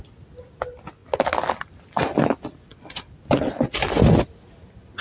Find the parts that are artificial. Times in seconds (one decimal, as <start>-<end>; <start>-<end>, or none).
none